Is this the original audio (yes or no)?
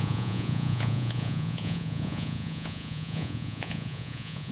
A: no